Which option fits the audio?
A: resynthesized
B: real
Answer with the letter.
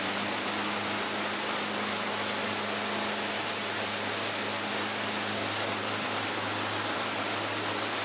B